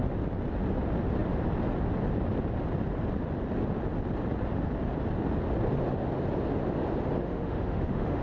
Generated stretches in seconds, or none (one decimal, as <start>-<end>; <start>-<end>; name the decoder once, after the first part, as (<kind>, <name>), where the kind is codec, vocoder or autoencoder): 7.2-8.2 (autoencoder, DAC-VAE)